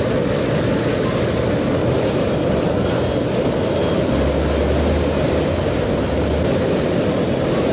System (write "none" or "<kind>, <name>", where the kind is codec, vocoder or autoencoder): none